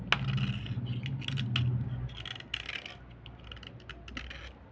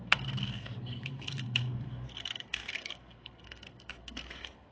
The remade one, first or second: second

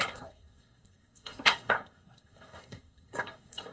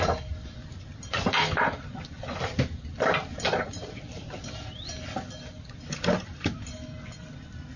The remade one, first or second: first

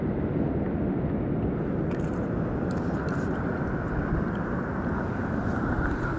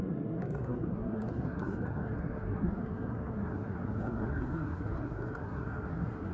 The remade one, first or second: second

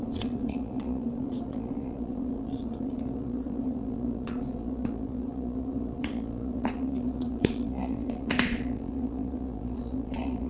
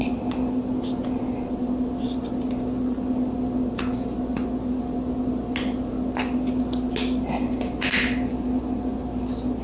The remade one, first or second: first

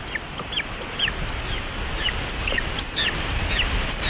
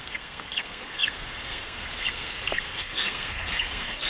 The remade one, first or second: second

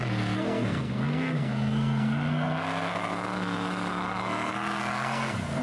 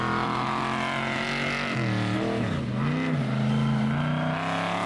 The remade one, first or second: first